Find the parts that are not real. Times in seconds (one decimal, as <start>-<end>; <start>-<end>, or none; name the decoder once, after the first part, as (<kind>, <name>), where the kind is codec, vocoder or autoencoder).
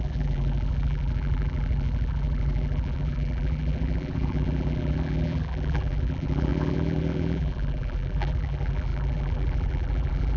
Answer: 0.0-10.4 (vocoder, BigVGAN v2)